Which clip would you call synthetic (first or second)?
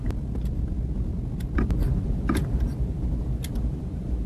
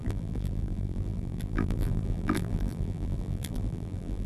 second